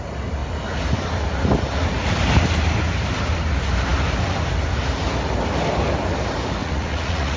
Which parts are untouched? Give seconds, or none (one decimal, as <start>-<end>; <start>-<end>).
0.0-6.6